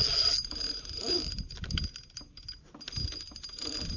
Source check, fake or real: real